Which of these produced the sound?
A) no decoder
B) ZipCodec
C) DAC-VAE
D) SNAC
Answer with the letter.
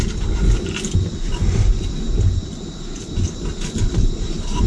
A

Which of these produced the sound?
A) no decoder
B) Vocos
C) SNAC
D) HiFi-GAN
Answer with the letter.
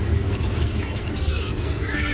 C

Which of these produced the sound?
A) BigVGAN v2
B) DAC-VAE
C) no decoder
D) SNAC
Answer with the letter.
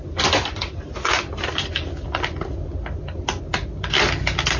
C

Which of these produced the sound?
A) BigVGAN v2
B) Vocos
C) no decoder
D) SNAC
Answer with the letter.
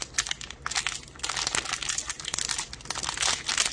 C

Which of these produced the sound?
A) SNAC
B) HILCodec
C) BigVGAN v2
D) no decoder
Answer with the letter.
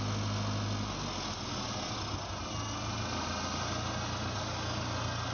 D